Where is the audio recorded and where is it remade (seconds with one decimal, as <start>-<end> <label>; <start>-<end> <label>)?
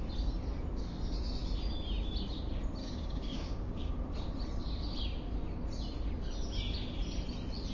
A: 0.0-2.8 recorded; 2.8-3.9 remade; 3.9-7.7 recorded